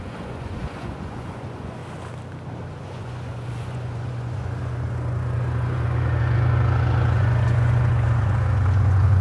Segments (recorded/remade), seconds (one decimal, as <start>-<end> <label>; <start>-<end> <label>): 0.0-1.8 remade; 1.8-2.8 recorded; 2.8-9.2 remade